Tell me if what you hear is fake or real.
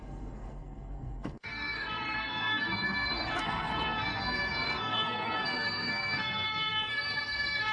fake